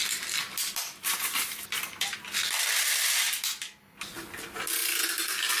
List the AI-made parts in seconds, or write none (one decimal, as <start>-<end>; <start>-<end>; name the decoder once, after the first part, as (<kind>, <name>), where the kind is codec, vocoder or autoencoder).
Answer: none